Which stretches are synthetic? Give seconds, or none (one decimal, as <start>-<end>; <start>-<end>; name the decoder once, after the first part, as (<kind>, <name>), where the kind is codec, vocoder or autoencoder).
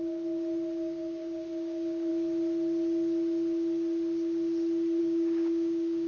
0.0-2.1 (codec, DAC); 5.0-6.1